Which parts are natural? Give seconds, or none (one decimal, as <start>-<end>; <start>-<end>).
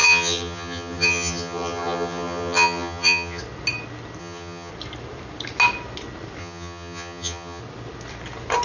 3.4-4.2; 4.7-6.4; 7.6-8.6